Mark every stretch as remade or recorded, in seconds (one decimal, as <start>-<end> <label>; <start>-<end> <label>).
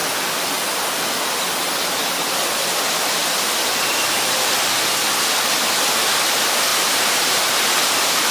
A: 0.0-6.7 recorded; 6.7-7.9 remade; 7.9-8.3 recorded